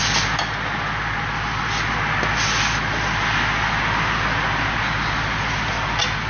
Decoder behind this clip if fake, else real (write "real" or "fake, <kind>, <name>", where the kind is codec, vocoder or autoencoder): real